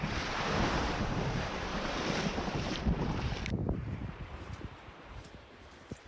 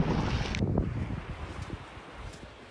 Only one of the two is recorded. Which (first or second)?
second